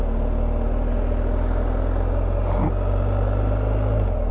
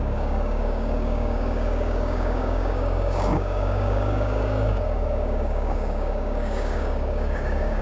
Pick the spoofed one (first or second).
second